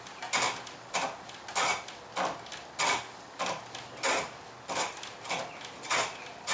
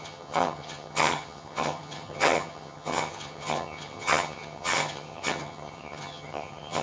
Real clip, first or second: first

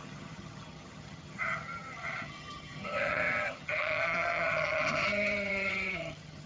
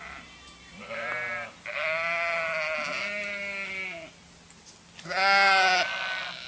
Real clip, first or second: second